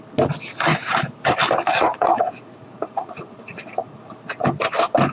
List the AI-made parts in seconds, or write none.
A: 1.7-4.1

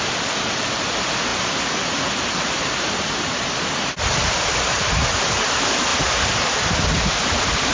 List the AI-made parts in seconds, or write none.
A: none

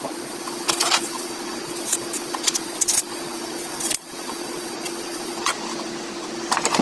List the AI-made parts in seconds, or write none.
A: 0.0-5.5

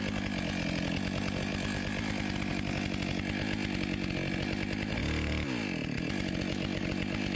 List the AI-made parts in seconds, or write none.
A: none

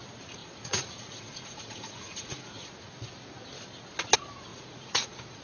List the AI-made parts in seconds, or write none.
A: 0.4-2.7; 4.5-5.4

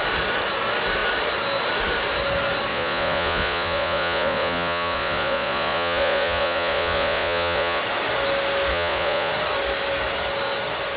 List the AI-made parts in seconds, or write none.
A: 2.7-7.8; 8.7-9.3

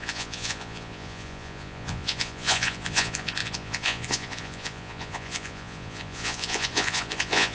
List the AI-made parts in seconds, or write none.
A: 0.0-7.5

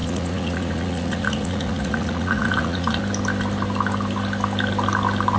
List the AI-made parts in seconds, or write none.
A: 0.0-3.0